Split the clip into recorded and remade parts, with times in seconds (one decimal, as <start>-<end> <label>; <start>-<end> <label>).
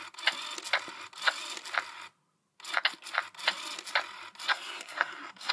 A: 0.0-4.5 recorded; 4.5-5.5 remade